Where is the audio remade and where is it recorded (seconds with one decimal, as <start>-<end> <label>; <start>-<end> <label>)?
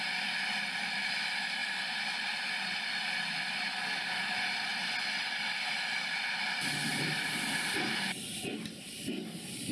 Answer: 0.0-9.7 recorded